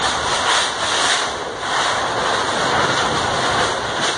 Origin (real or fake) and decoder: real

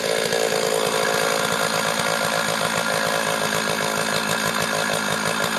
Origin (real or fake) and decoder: real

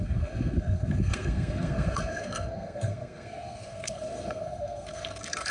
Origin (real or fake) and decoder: fake, codec, SNAC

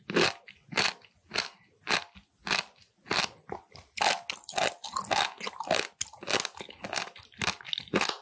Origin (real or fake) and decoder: real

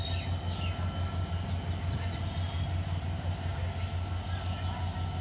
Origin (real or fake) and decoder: real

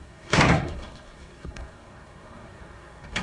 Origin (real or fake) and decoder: fake, codec, SNAC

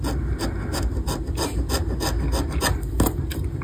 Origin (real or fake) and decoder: real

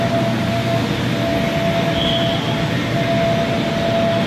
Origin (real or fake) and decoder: real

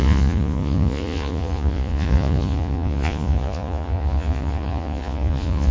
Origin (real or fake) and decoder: fake, vocoder, Vocos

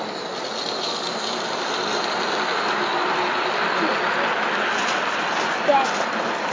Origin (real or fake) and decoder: real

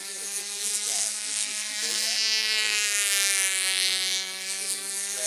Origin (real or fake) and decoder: fake, autoencoder, DAC-VAE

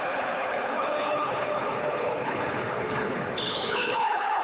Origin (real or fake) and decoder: fake, codec, HILCodec